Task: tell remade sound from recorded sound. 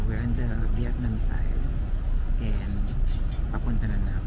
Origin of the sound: recorded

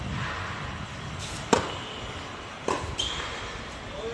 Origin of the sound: recorded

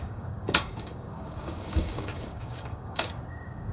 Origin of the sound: remade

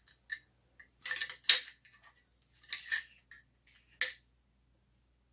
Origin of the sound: recorded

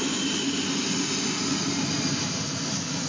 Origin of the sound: recorded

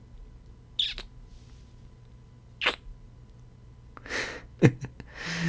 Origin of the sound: recorded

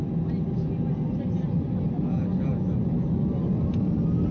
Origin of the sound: recorded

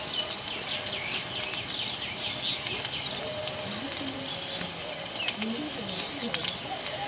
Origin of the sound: recorded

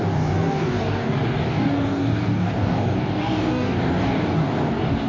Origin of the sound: remade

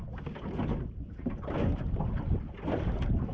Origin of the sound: recorded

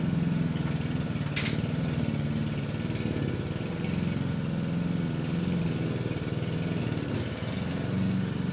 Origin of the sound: recorded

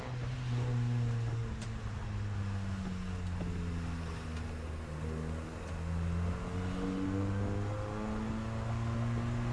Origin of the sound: recorded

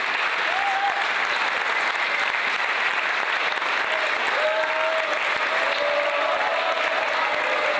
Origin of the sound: recorded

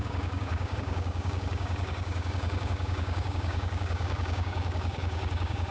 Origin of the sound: remade